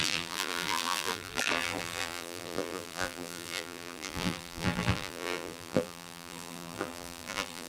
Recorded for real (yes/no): no